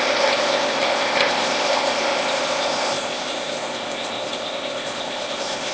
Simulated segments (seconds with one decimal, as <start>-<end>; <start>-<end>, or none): 0.0-5.7